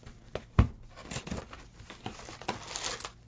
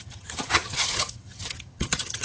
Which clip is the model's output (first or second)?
second